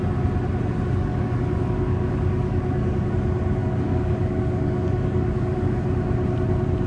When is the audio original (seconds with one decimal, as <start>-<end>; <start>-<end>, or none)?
0.0-1.1; 3.1-3.6; 5.8-6.9